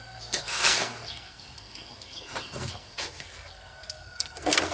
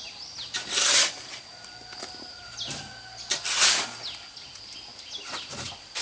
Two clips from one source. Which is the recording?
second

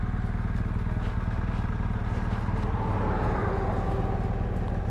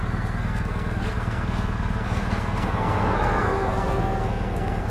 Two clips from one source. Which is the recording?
first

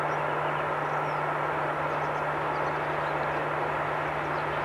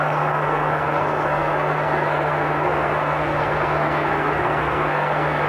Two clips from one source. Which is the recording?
first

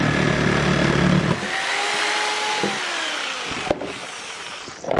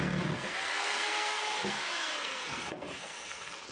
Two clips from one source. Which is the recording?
first